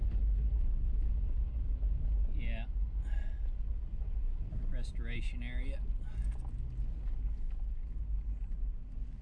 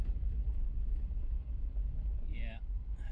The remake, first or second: second